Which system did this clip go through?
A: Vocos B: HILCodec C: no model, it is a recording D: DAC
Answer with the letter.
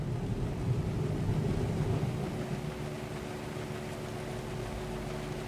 C